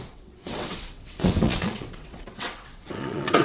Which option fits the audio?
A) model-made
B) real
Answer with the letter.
A